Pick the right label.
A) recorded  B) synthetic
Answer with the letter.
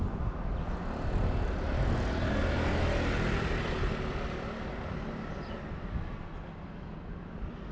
A